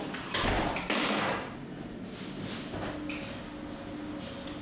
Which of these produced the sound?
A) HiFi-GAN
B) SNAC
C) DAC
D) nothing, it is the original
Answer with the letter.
D